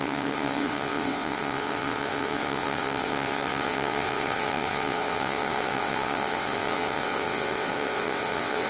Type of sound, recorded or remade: remade